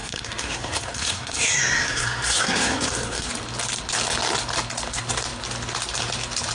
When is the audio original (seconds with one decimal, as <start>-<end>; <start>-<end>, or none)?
3.3-6.5